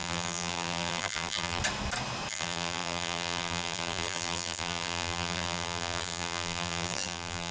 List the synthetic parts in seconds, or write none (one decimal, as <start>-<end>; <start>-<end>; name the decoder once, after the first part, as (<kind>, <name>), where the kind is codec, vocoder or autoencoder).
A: 0.0-1.6 (vocoder, BigVGAN v2); 2.3-7.5